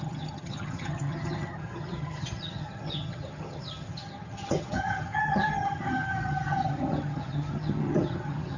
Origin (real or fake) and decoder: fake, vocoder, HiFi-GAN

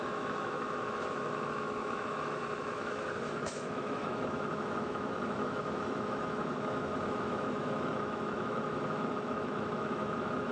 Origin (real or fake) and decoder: fake, autoencoder, DAC-VAE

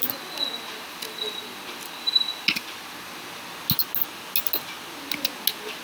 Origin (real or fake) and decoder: real